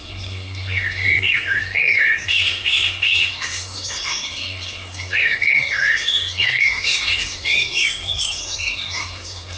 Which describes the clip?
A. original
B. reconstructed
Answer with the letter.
B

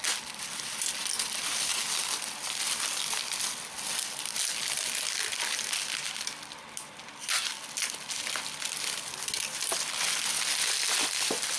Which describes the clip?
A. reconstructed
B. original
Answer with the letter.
B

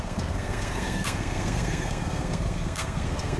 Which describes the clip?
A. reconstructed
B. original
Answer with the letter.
A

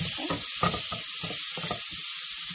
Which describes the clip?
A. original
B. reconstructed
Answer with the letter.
A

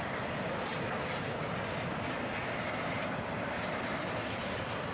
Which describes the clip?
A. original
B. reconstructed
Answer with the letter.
A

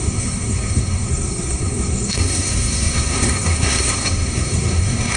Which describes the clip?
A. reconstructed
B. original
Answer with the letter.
A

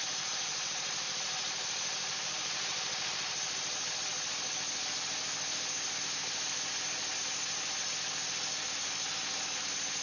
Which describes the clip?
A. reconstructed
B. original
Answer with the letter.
B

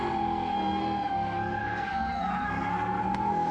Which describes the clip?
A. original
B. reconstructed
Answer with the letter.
B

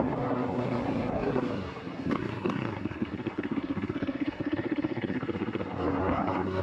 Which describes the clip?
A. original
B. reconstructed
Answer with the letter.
B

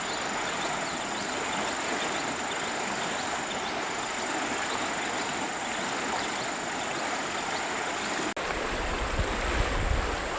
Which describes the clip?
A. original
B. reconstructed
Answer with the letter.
A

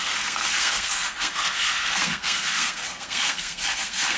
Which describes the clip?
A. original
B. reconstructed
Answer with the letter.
B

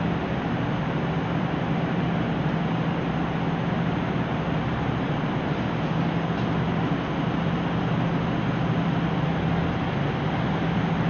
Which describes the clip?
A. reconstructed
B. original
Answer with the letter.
B